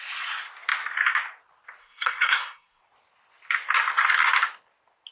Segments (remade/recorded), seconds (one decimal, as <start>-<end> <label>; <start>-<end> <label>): 0.0-1.8 recorded; 1.8-2.8 remade; 2.8-5.1 recorded